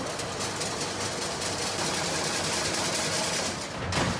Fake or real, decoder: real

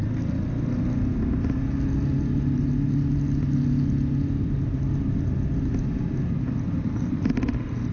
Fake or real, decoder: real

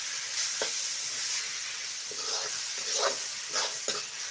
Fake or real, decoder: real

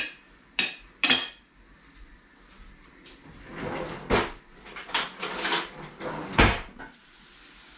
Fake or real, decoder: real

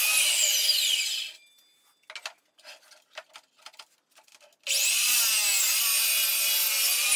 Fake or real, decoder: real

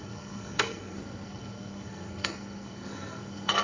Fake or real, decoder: fake, codec, SNAC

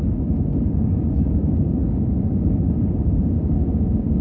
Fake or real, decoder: fake, codec, DAC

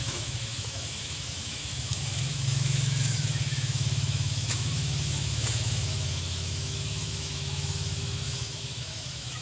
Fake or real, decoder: fake, autoencoder, DAC-VAE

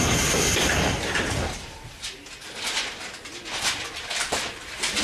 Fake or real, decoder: real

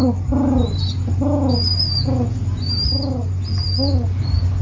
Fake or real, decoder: real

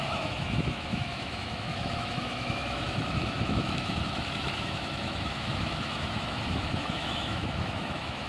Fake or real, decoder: fake, autoencoder, DAC-VAE